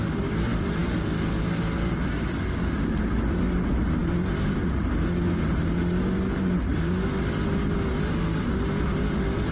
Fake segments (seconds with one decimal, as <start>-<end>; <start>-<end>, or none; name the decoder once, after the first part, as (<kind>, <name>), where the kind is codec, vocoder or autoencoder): none